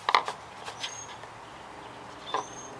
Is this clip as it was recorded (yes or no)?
yes